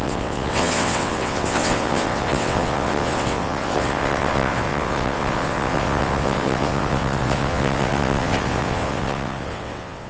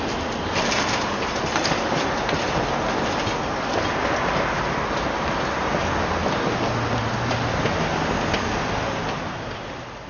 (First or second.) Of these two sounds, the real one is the second